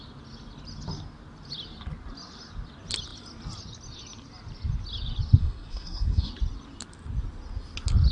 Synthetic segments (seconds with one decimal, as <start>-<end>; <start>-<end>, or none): 5.4-6.3